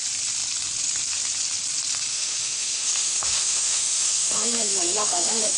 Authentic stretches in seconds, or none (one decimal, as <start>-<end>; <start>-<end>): 0.0-2.1